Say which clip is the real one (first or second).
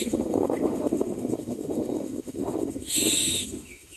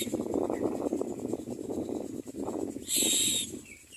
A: second